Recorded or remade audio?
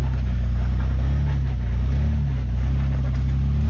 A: recorded